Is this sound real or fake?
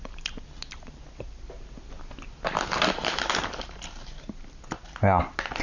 real